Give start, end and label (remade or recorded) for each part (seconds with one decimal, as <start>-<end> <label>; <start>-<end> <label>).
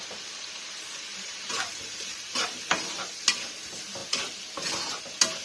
0.0-1.1 recorded; 1.1-2.3 remade; 2.3-5.4 recorded